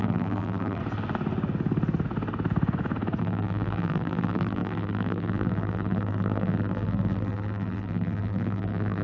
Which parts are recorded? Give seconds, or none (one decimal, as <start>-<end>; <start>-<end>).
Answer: 0.8-3.2